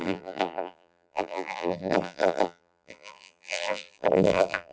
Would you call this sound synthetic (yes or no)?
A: yes